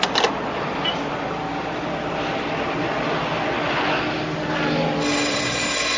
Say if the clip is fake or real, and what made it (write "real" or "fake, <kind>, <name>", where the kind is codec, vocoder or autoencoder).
real